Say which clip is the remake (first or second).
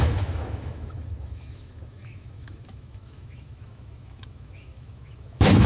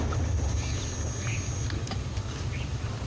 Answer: first